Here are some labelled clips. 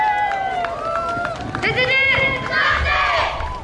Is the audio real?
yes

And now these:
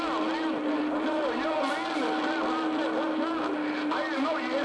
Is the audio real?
yes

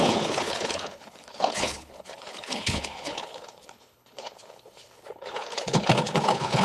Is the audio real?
no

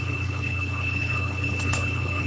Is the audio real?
no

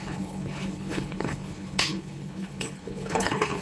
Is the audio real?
no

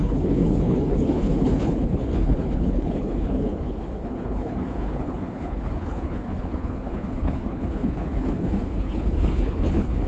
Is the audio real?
no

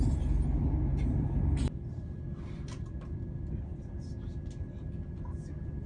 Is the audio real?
yes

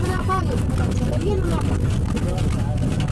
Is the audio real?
yes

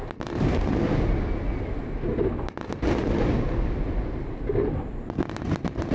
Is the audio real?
yes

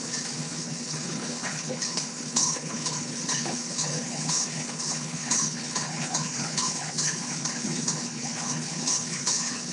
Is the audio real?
no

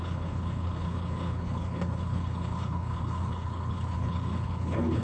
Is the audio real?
no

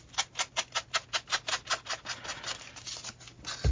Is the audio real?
yes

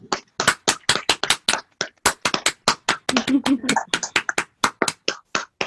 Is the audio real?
yes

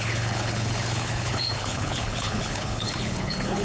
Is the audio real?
no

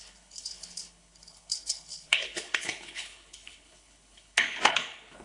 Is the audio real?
no